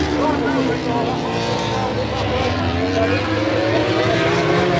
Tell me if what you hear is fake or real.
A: real